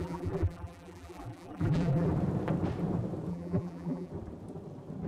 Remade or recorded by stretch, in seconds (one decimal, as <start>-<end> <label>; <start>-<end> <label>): 0.0-2.1 remade; 2.1-3.3 recorded; 3.3-4.1 remade; 4.1-5.1 recorded